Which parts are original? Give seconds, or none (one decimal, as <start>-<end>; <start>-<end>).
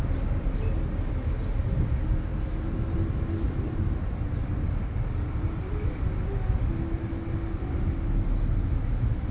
0.0-9.3